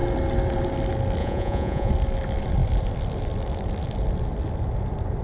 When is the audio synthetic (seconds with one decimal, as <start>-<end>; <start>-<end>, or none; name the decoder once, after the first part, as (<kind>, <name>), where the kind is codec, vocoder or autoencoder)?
1.2-1.9 (vocoder, Vocos)